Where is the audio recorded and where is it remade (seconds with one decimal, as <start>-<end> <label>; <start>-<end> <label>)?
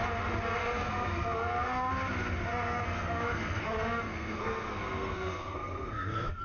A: 0.0-0.6 recorded; 0.6-1.9 remade; 1.9-2.5 recorded; 2.5-6.4 remade